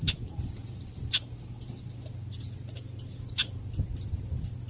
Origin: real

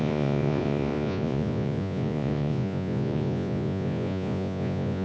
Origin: fake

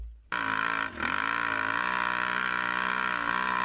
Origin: real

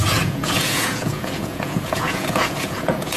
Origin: fake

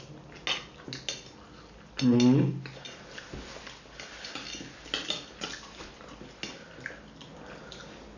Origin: real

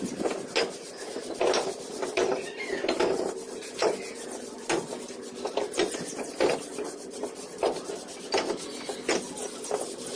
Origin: real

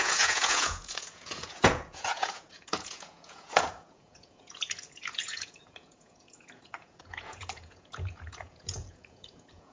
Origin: fake